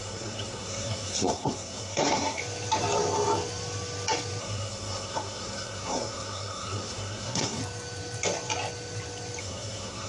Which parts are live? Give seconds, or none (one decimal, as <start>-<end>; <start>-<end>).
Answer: 2.4-4.4; 7.6-9.4